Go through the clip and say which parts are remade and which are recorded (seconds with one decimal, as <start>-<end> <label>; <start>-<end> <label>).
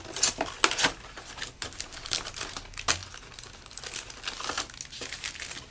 0.0-5.7 recorded